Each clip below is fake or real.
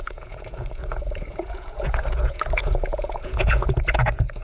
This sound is fake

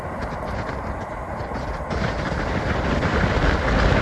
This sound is real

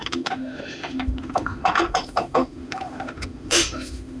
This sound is fake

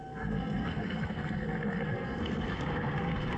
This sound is fake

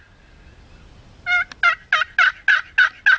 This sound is real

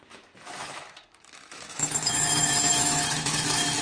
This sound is fake